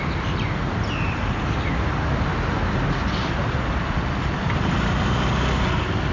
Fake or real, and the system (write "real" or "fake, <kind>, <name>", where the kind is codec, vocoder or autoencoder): real